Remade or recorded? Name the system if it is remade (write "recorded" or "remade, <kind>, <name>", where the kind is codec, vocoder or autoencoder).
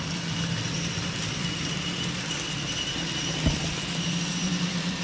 remade, vocoder, BigVGAN v2